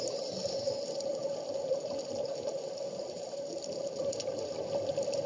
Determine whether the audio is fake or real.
real